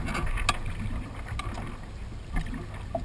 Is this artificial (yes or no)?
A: no